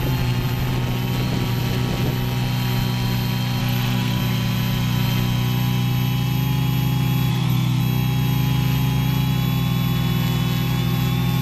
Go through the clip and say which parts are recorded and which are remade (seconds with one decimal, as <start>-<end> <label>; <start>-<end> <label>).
0.0-3.6 recorded; 3.6-4.2 remade; 4.2-7.3 recorded; 7.3-7.8 remade; 7.8-11.4 recorded